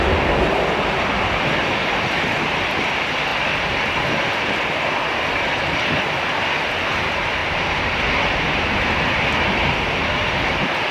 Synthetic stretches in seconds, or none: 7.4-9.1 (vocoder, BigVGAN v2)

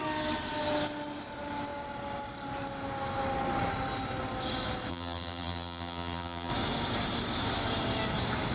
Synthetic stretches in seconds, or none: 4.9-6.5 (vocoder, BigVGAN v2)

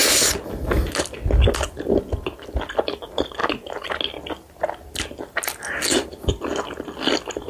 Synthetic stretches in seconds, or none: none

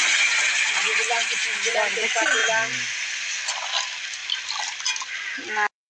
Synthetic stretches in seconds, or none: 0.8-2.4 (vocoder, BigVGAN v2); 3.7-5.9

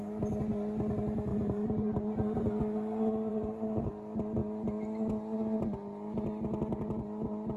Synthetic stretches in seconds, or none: 1.3-2.5 (vocoder, BigVGAN v2); 3.3-3.9